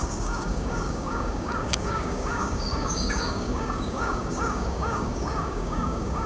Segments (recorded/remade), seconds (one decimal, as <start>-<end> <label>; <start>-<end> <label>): 0.0-6.3 remade